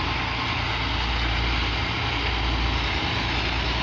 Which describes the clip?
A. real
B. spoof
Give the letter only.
A